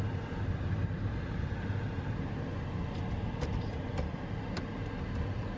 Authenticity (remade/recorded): recorded